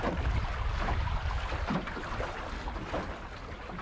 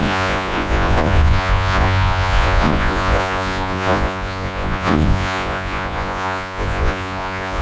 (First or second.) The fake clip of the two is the second